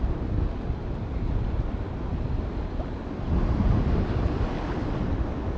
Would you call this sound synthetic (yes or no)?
no